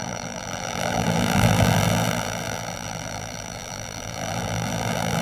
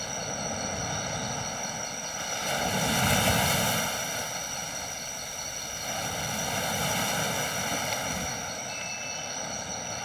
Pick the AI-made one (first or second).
first